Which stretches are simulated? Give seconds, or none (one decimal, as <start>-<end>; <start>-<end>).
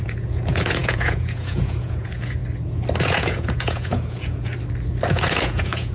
0.0-2.4; 3.0-4.5; 5.1-5.9